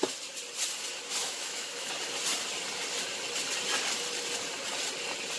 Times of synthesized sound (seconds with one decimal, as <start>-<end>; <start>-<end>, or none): 1.2-1.9